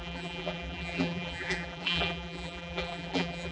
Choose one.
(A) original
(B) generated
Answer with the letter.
B